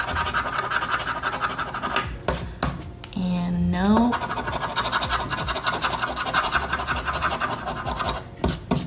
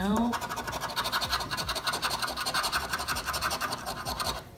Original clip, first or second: first